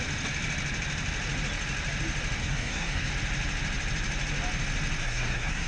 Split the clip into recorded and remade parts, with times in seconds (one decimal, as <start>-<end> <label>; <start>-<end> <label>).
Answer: 0.0-2.4 recorded; 2.4-3.1 remade; 3.1-5.0 recorded; 5.0-5.7 remade